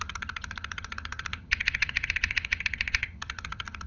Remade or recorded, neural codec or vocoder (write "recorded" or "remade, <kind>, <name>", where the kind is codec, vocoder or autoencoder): remade, vocoder, HiFi-GAN